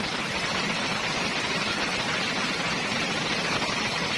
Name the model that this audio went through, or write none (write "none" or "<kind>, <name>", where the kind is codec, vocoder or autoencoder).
none